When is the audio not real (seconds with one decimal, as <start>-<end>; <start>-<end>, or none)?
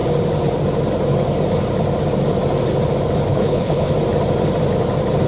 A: 3.3-3.9